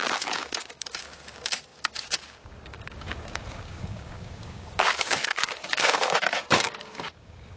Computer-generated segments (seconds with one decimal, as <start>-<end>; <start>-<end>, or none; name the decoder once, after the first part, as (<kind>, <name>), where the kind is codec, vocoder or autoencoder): 0.0-7.6 (codec, DAC)